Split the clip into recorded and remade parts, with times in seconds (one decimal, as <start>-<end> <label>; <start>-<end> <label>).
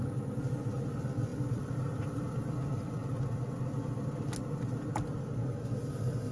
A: 0.0-1.3 recorded; 1.3-2.6 remade; 2.6-6.3 recorded